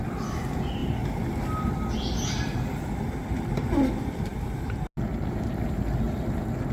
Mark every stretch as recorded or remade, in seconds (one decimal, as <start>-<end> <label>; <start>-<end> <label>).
0.0-6.7 recorded